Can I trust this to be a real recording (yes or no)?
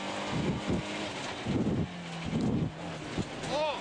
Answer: yes